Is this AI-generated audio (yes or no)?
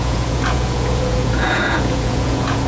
yes